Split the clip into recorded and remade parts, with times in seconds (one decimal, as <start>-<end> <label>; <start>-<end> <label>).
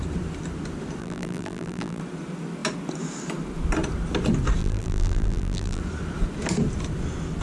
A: 0.0-1.0 recorded; 1.0-2.0 remade; 2.0-4.6 recorded; 4.6-5.8 remade; 5.8-7.4 recorded